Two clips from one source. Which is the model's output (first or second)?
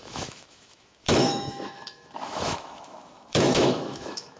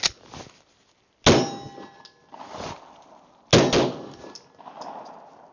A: first